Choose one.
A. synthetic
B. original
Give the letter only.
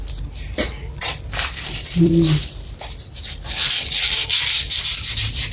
A